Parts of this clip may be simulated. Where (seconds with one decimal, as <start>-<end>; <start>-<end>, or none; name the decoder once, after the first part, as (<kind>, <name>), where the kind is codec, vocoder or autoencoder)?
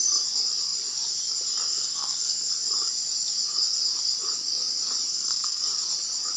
1.7-2.5 (codec, SNAC); 5.1-5.6